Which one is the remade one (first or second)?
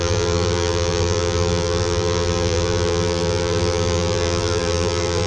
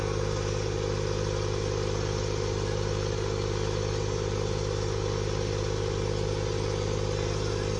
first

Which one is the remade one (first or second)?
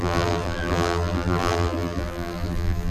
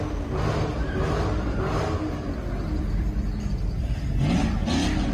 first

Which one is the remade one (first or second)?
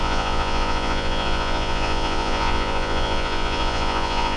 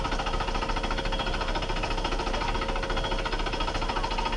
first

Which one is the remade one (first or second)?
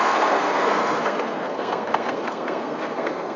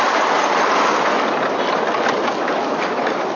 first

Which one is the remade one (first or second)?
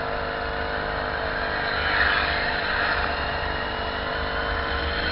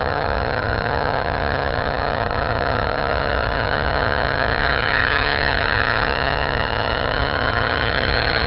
second